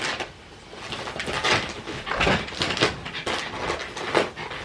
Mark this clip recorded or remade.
recorded